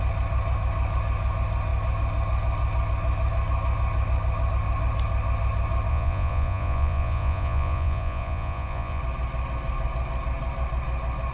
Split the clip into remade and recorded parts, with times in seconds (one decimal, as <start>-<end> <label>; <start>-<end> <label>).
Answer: 0.0-5.9 recorded; 5.9-9.0 remade; 9.0-11.3 recorded